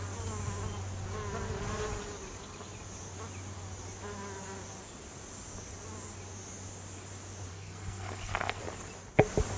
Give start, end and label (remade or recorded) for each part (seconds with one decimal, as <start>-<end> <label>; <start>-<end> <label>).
0.0-7.5 recorded; 7.5-8.6 remade; 8.6-9.6 recorded